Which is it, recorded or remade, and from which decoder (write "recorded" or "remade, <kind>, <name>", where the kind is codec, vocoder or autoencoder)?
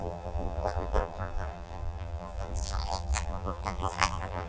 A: remade, vocoder, BigVGAN v2